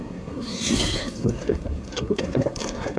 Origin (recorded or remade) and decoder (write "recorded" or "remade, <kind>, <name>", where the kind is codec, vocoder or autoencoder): remade, codec, SNAC